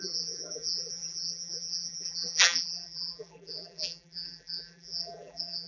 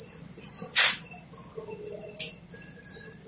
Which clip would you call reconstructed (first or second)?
first